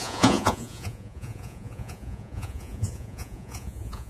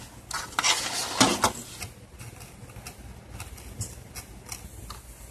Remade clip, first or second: first